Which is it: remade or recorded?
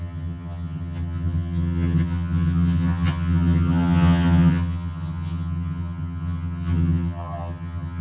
remade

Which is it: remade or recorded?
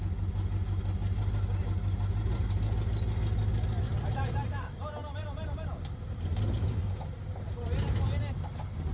recorded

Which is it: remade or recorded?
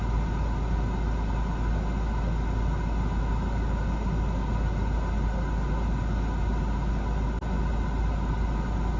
recorded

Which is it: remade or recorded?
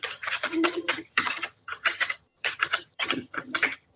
remade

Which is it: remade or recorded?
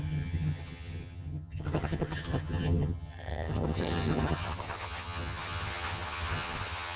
remade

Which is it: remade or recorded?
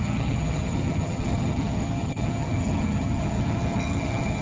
remade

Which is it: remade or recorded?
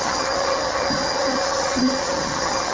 remade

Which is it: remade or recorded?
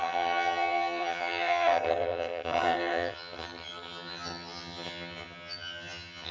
remade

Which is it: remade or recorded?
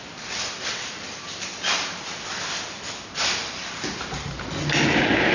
recorded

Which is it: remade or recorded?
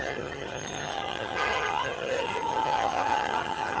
remade